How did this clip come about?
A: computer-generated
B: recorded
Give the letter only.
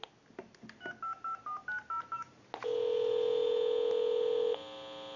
B